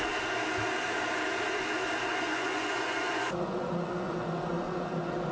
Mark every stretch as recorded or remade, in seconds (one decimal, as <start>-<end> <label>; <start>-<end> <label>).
0.0-2.1 recorded; 2.1-5.3 remade